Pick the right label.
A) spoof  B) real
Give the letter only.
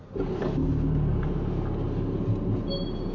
B